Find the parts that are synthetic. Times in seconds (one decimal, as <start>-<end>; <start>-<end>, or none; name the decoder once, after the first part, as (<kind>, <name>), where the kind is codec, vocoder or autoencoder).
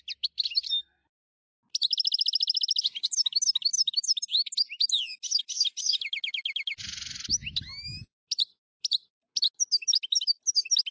none